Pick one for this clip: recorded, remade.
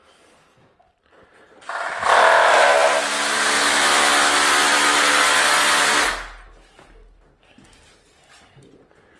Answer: recorded